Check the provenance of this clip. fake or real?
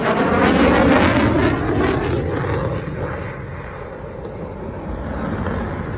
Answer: real